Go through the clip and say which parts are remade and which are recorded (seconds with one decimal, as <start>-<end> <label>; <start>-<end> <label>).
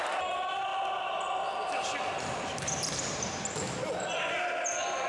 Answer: 0.0-5.1 recorded